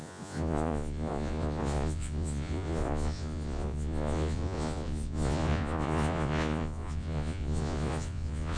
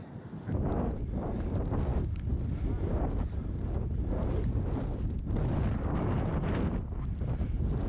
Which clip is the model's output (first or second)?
first